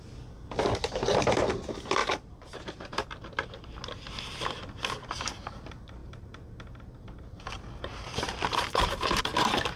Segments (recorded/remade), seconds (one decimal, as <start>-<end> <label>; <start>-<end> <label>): 0.0-2.0 recorded; 2.0-3.5 remade; 3.5-6.0 recorded; 6.0-9.2 remade; 9.2-9.8 recorded